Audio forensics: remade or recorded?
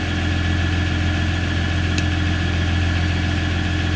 recorded